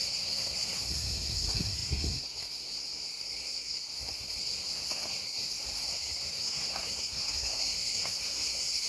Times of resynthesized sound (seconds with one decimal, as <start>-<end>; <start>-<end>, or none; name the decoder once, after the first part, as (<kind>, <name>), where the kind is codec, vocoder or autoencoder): 0.0-8.9 (codec, SNAC)